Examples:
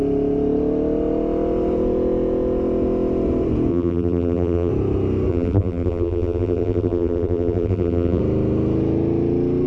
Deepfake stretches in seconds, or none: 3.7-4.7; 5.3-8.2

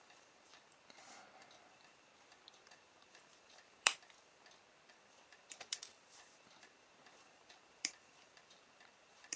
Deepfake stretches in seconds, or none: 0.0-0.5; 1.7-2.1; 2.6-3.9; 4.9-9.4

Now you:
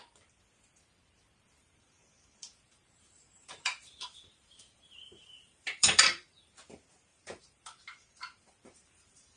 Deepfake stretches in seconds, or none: 1.6-6.5; 7.1-9.4

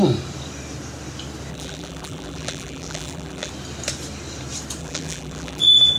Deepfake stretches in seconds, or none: 1.5-3.5; 4.8-5.6